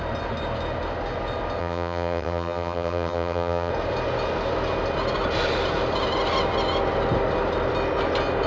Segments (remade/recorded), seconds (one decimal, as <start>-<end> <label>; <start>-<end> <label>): 0.0-1.6 recorded; 1.6-3.7 remade; 3.7-8.5 recorded